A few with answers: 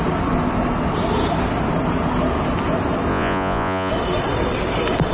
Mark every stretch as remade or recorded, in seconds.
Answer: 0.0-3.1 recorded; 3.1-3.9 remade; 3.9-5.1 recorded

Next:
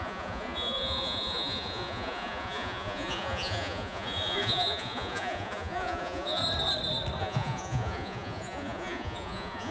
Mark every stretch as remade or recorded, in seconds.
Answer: 0.0-6.4 remade; 6.4-7.2 recorded; 7.2-9.7 remade

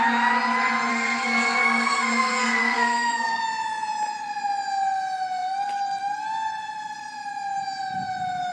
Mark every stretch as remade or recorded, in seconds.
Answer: 0.0-0.9 recorded; 0.9-3.4 remade; 3.4-8.5 recorded

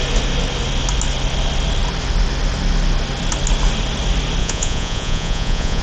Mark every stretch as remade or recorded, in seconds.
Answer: 0.0-4.4 recorded; 4.4-5.8 remade

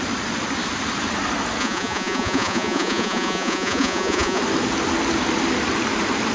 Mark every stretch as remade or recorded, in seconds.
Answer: 0.0-1.6 recorded; 1.6-4.4 remade; 4.4-6.3 recorded